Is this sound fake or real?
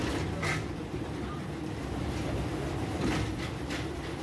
fake